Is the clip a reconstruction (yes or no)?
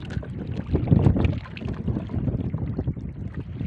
no